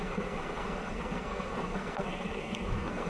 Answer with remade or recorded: remade